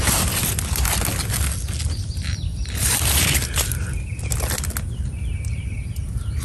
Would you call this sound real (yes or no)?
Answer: yes